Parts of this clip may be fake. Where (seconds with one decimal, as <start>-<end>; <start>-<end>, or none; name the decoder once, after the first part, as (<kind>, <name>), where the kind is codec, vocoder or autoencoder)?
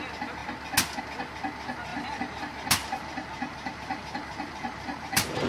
1.9-2.4 (vocoder, BigVGAN v2); 2.8-5.5